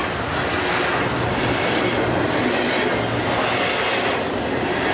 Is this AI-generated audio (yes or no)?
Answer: no